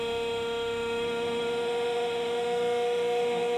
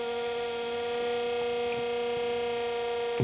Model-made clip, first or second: first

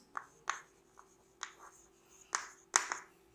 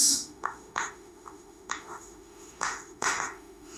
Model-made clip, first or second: second